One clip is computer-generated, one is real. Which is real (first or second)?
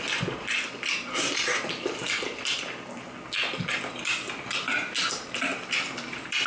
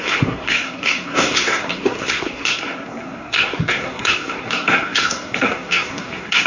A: first